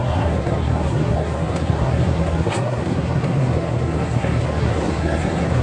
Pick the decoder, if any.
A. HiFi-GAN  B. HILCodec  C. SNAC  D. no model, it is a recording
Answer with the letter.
C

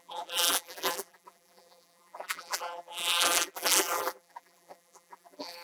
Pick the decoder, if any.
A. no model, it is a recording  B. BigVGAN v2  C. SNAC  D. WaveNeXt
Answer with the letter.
B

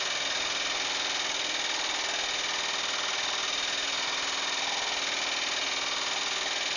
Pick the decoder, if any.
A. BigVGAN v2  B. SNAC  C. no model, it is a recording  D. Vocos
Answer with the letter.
C